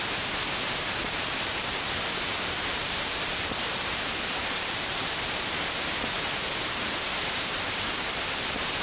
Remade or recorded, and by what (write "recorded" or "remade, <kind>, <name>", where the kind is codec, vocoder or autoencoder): remade, vocoder, BigVGAN v2